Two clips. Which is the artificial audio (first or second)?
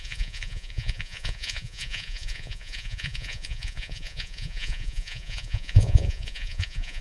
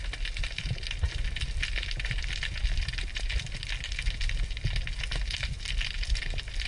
first